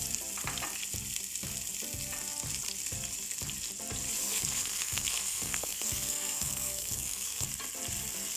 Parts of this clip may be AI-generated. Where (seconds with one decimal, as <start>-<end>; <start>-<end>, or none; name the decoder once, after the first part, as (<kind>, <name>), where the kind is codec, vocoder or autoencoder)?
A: 4.2-7.5 (codec, SNAC)